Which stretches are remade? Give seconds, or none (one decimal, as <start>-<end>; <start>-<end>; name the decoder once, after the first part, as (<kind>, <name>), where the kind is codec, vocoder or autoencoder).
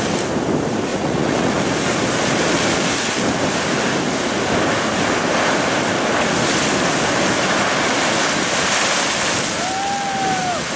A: 0.9-1.6 (vocoder, Vocos)